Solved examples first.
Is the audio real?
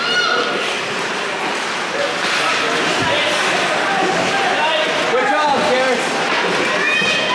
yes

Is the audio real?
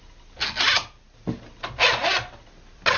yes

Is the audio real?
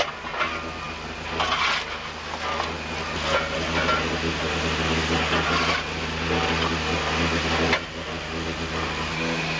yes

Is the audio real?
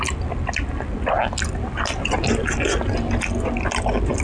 yes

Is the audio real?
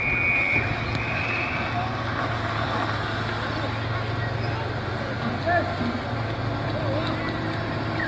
yes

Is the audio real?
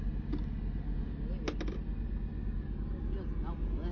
yes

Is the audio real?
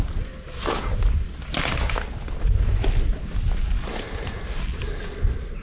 yes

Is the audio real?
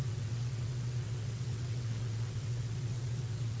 no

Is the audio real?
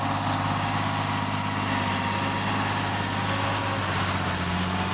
yes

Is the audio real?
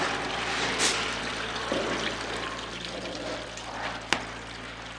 yes